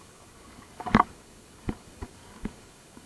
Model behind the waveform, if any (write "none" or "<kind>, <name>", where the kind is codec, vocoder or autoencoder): codec, DAC